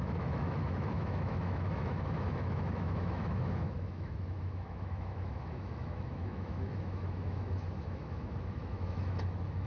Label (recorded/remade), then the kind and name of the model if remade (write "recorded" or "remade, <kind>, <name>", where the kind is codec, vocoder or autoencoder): remade, autoencoder, DAC-VAE